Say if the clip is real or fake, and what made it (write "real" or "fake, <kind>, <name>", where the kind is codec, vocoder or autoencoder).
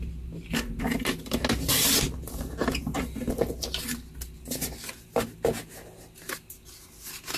real